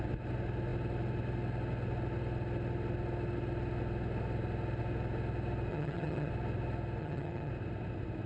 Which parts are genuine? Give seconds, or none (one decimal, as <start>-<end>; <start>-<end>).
0.0-5.7; 6.3-7.0; 7.5-8.3